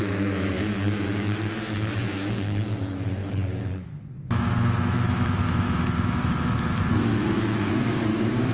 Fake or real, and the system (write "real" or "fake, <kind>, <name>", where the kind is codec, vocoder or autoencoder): fake, autoencoder, DAC-VAE